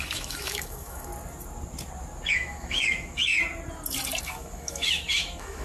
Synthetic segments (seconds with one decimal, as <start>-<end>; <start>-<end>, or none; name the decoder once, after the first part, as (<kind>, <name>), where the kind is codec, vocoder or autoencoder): 0.0-1.1 (autoencoder, DAC-VAE); 2.3-3.3; 4.2-5.6